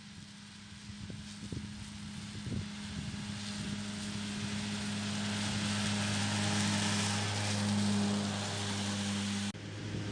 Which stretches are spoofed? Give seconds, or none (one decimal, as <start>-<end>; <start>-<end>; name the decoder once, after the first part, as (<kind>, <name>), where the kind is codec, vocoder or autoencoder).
none